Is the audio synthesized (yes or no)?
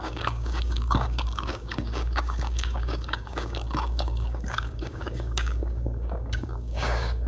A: yes